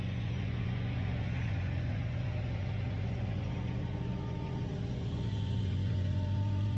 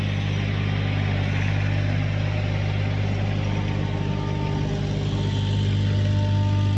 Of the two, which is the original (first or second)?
second